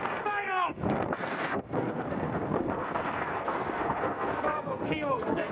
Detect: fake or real fake